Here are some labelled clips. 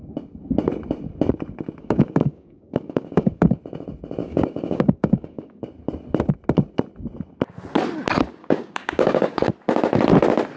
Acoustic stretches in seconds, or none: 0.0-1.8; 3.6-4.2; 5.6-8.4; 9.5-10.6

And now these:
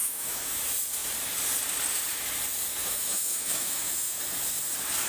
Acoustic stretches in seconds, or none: 0.6-2.8; 4.2-5.1

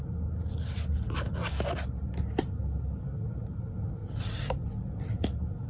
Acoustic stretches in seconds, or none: 0.0-5.7

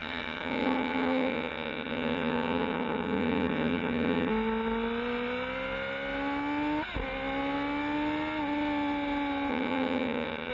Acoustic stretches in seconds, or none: 4.3-9.5

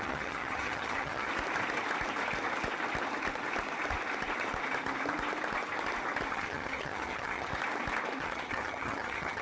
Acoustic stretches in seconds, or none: 1.3-6.3; 7.5-8.2

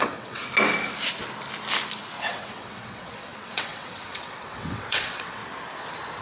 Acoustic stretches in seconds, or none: 0.4-2.2; 5.4-6.2

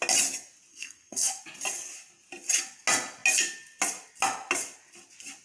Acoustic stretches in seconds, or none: 0.0-0.7; 1.4-5.4